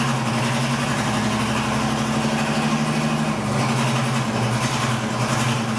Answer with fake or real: real